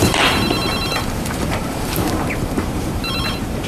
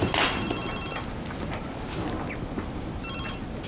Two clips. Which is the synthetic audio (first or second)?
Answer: first